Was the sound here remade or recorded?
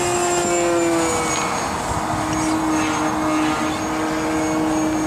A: recorded